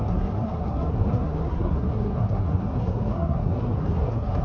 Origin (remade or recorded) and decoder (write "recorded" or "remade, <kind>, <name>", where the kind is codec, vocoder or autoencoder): remade, codec, SNAC